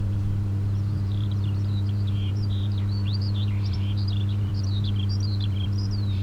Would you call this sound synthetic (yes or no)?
yes